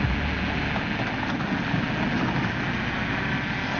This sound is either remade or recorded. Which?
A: recorded